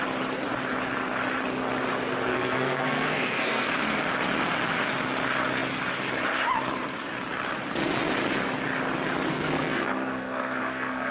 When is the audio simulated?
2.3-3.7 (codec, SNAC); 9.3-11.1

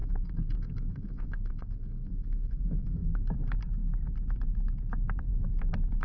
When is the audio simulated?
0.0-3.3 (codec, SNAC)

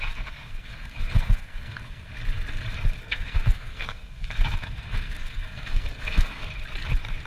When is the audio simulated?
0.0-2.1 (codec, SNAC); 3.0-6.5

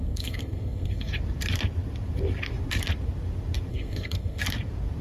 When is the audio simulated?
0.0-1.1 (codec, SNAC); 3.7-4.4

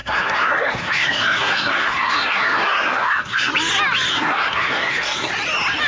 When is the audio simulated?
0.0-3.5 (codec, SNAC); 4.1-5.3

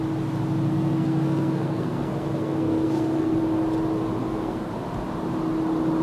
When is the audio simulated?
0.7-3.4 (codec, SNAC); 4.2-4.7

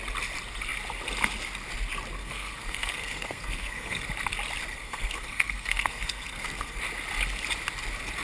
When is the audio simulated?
2.2-4.0 (codec, SNAC); 4.7-6.8